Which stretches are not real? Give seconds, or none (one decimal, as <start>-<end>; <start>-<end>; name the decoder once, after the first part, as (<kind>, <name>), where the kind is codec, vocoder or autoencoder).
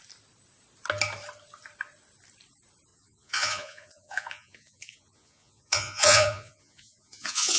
2.9-7.6 (vocoder, Vocos)